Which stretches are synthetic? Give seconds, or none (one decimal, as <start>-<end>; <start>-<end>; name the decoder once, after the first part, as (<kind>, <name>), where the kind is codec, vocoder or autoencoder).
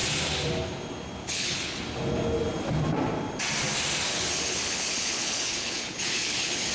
1.2-1.8 (codec, HILCodec); 4.1-6.7